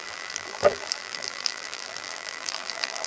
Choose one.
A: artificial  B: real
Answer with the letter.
A